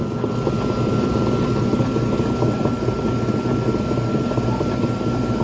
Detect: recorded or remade recorded